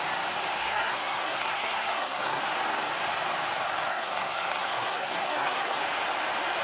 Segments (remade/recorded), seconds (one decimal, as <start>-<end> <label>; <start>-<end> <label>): 0.0-0.6 recorded; 0.6-2.4 remade; 2.4-3.9 recorded; 3.9-5.8 remade; 5.8-6.6 recorded